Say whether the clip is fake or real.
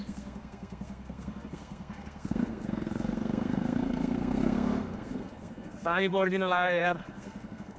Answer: fake